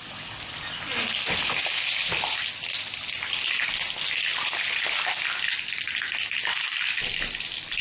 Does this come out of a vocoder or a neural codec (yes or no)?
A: no